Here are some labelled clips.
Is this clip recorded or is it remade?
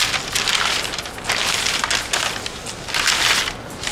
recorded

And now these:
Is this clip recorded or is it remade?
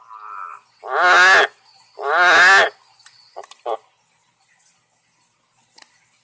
recorded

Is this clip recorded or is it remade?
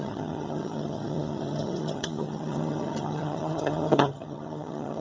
remade